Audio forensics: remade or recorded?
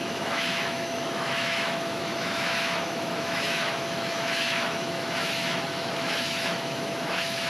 remade